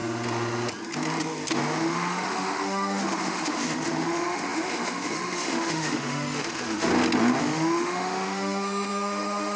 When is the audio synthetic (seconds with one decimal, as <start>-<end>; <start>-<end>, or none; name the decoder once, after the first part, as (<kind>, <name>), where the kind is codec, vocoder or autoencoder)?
1.8-6.9 (autoencoder, DAC-VAE); 7.4-9.6